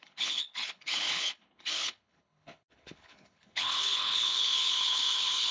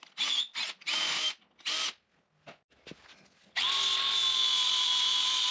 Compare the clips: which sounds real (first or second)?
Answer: second